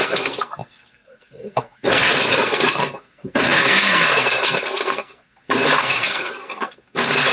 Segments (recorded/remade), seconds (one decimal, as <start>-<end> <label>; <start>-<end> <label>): 0.0-7.3 remade